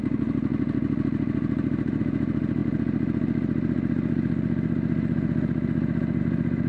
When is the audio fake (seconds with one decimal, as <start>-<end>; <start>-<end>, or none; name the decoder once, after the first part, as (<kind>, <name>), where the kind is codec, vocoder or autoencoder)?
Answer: none